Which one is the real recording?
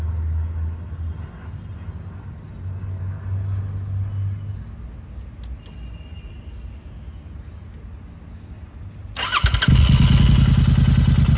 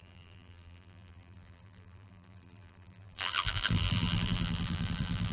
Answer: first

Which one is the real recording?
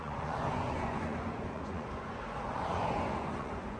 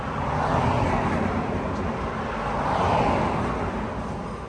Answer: second